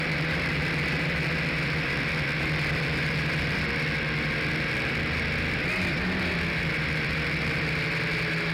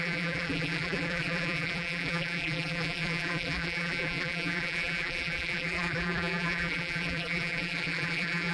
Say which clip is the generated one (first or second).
second